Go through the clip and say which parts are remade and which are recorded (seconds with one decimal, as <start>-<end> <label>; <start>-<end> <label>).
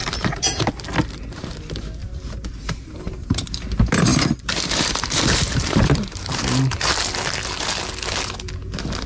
0.0-0.7 remade; 0.7-2.0 recorded; 2.0-3.6 remade; 3.6-4.1 recorded; 4.1-6.4 remade; 6.4-9.1 recorded